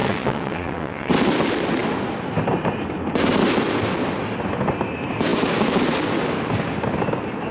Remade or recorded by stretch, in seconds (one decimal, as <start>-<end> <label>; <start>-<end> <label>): 0.0-1.1 remade; 1.1-7.5 recorded